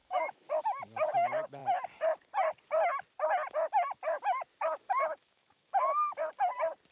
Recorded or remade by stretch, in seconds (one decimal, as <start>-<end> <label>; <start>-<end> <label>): 0.0-0.6 remade; 0.6-5.0 recorded; 5.0-6.3 remade; 6.3-6.9 recorded